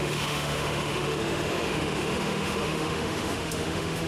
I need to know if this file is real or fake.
fake